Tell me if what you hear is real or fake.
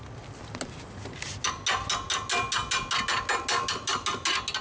real